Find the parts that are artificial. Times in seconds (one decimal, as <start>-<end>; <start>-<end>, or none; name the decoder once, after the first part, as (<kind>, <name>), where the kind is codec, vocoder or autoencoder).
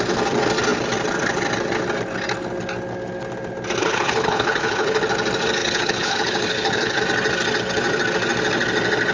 3.8-5.0 (codec, HILCodec); 5.6-7.0